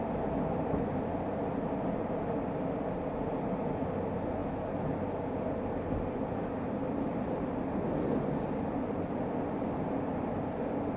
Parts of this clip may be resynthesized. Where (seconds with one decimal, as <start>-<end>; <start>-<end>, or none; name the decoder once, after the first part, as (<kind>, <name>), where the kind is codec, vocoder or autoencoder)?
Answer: none